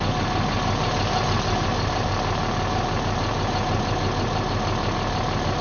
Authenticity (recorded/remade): recorded